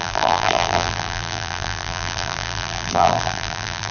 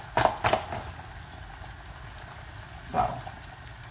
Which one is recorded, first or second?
second